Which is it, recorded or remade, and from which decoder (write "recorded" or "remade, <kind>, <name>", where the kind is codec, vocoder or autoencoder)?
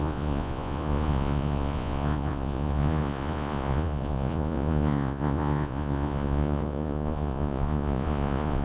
remade, vocoder, Vocos